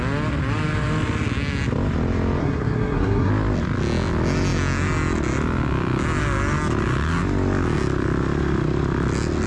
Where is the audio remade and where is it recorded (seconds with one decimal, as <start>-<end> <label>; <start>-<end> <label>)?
0.0-2.4 recorded; 2.4-3.3 remade; 3.3-9.5 recorded